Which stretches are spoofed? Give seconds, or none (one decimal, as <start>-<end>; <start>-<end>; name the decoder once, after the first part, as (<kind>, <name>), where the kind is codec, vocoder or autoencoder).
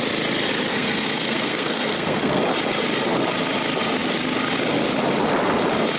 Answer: 0.7-2.4 (codec, SNAC)